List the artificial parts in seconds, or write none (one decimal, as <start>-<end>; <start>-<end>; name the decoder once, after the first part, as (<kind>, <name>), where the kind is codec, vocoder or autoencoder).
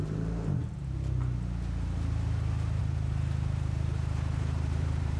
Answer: 0.0-0.8 (vocoder, BigVGAN v2); 2.8-5.2